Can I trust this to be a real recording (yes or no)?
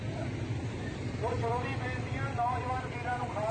yes